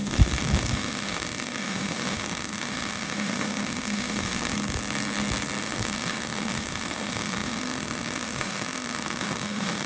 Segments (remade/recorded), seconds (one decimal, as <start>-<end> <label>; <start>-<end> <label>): 0.0-4.5 remade; 4.5-5.6 recorded; 5.6-9.9 remade